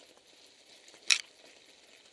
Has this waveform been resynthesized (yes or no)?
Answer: no